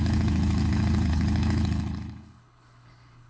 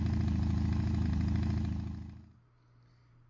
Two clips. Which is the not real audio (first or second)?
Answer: first